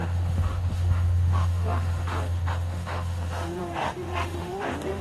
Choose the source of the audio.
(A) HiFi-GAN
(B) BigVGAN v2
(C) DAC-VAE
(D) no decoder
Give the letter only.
C